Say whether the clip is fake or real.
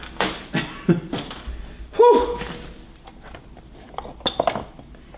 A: real